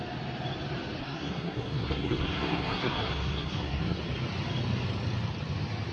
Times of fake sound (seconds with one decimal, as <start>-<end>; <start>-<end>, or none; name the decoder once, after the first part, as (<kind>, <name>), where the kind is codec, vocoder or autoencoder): 1.0-4.0 (codec, SNAC)